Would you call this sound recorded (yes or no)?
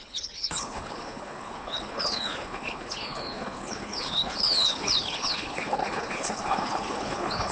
no